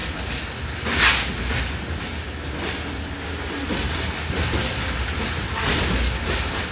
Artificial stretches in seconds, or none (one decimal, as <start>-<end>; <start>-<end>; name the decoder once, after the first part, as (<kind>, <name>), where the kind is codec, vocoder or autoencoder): none